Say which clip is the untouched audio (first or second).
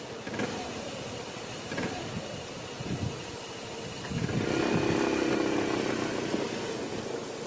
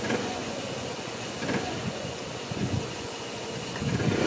first